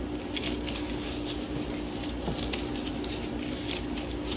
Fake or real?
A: real